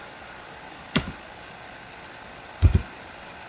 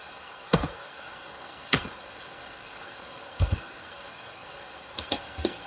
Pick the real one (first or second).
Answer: first